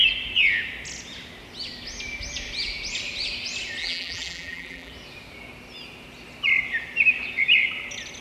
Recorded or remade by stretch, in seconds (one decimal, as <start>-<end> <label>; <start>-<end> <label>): 0.0-3.8 recorded; 3.8-4.9 remade; 4.9-8.2 recorded